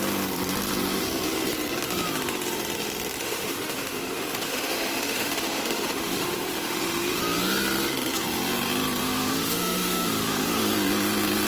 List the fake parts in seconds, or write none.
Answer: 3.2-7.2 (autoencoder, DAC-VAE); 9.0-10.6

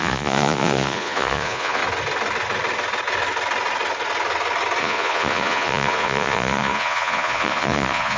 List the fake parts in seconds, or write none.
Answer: 0.0-1.8 (vocoder, Vocos); 4.8-8.2